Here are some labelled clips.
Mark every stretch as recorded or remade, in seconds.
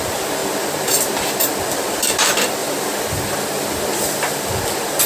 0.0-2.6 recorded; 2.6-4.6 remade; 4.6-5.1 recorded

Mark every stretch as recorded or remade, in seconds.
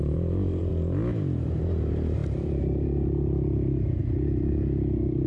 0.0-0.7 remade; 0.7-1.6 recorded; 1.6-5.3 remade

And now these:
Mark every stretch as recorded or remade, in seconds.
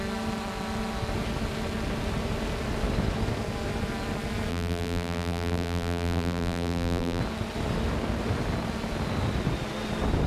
0.0-4.5 recorded; 4.5-7.2 remade; 7.2-10.3 recorded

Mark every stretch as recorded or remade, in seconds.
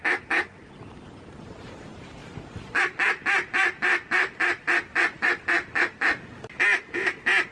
0.0-2.2 recorded; 2.2-6.2 remade; 6.2-7.5 recorded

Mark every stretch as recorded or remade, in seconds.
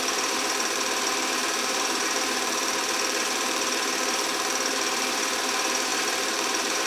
0.0-6.9 remade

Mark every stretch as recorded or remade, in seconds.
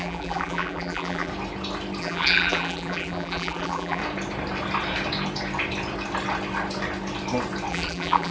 0.0-1.3 remade; 1.3-2.0 recorded; 2.0-4.0 remade; 4.0-7.7 recorded; 7.7-8.3 remade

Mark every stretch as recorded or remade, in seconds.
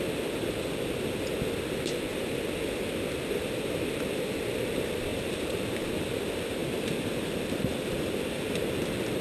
0.0-5.1 recorded; 5.1-5.7 remade; 5.7-9.2 recorded